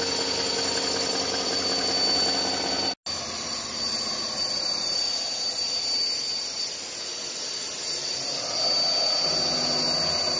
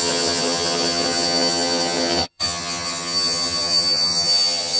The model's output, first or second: second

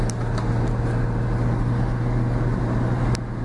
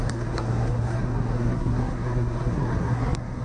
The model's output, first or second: second